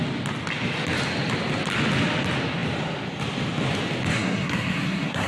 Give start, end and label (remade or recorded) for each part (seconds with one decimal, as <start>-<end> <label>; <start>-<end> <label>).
0.0-4.1 recorded; 4.1-5.3 remade